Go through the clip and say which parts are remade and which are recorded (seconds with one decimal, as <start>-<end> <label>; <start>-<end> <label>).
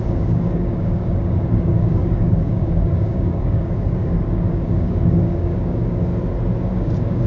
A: 0.0-6.1 remade; 6.1-6.7 recorded; 6.7-7.3 remade